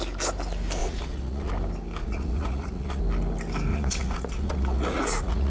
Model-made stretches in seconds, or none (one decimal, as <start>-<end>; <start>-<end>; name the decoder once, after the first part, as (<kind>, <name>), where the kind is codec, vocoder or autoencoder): 0.8-1.5 (vocoder, Vocos); 2.0-3.0; 3.7-5.5